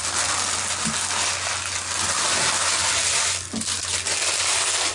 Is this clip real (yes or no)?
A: yes